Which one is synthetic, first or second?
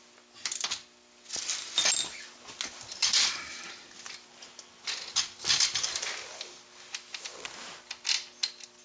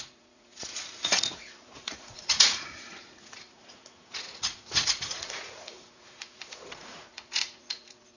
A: second